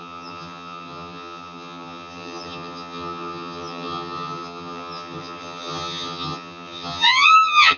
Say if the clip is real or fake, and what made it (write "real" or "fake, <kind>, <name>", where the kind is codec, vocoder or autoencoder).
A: fake, vocoder, HiFi-GAN